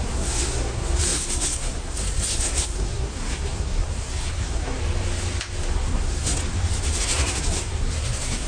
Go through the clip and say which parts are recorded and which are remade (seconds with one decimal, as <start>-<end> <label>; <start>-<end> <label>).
0.0-4.8 remade; 4.8-5.7 recorded; 5.7-6.4 remade; 6.4-7.0 recorded; 7.0-8.5 remade